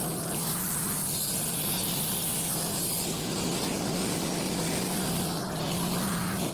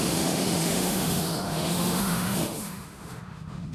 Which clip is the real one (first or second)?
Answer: first